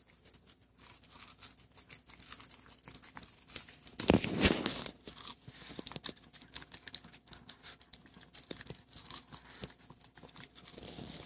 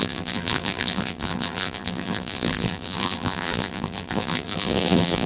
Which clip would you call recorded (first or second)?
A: first